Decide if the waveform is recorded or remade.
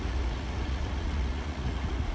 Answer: remade